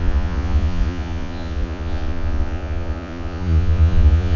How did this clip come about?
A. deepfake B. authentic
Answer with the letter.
A